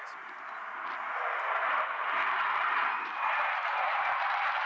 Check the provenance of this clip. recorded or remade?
recorded